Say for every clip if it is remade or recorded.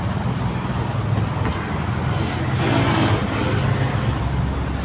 recorded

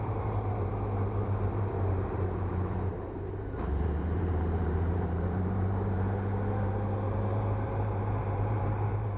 remade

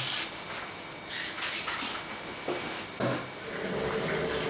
recorded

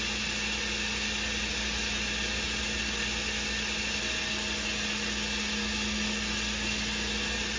recorded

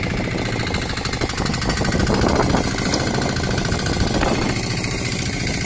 recorded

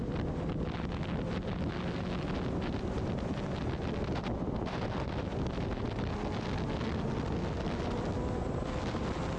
recorded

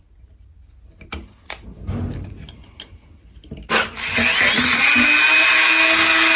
recorded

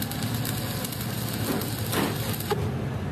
recorded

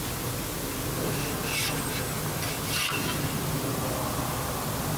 recorded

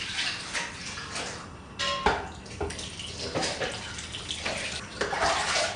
recorded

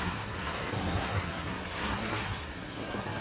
remade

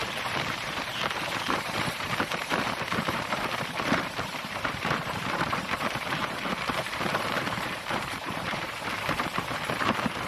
remade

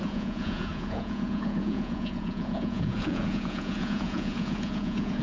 remade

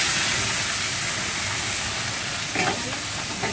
recorded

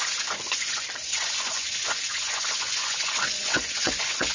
remade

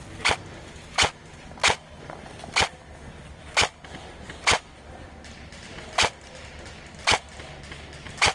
recorded